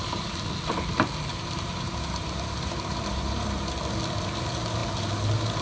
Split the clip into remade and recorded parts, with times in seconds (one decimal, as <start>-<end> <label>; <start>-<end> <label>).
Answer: 0.0-1.3 recorded; 1.3-3.6 remade; 3.6-5.6 recorded